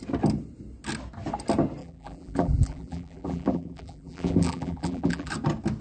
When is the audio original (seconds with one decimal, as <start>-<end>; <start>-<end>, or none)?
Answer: 0.0-1.8; 5.3-5.8